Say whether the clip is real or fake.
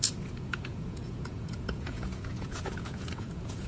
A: fake